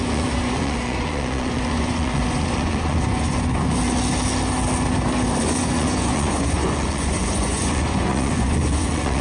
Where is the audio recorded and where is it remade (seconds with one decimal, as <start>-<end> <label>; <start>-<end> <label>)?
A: 0.0-3.8 remade; 3.8-5.4 recorded; 5.4-9.2 remade